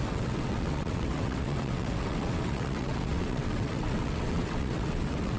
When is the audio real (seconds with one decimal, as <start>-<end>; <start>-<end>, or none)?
none